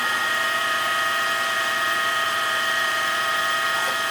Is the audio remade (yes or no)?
yes